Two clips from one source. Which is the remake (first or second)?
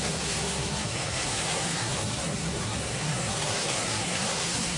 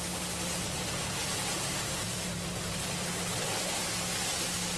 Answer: first